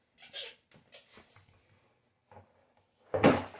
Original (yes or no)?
yes